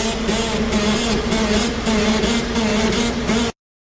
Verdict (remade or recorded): recorded